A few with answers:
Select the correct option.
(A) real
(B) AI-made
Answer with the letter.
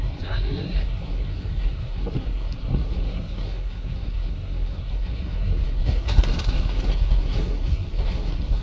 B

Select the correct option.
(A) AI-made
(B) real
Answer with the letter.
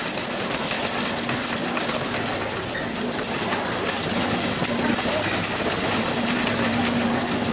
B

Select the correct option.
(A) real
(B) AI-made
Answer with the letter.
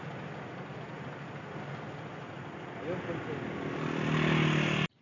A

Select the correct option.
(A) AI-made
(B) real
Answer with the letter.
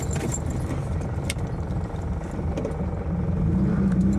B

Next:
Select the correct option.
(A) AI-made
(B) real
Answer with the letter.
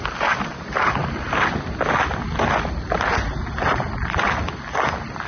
B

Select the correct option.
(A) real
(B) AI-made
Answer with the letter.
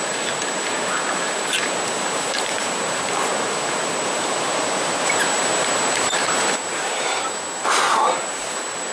B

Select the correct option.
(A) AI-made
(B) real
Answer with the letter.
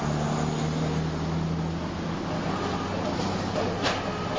B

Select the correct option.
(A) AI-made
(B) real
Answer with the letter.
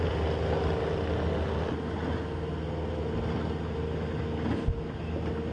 B